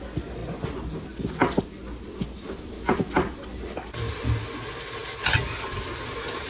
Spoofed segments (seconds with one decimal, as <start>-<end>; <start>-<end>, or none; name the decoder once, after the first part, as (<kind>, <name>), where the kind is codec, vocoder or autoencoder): none